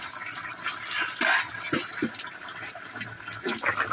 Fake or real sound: fake